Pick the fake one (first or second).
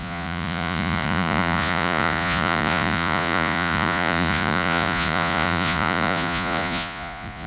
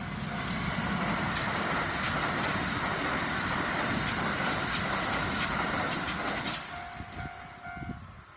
first